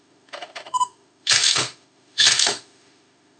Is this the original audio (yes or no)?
no